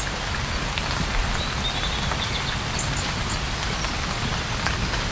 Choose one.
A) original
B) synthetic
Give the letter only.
A